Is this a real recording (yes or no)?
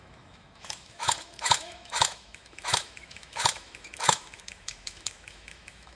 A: no